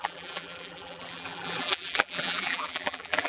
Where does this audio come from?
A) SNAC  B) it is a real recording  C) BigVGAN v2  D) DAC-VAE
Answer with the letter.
C